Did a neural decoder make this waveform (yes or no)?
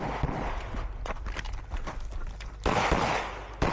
no